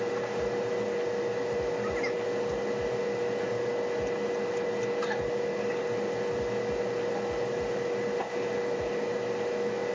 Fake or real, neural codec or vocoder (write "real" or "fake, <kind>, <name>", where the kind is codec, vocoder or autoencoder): real